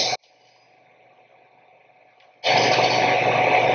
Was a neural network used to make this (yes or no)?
no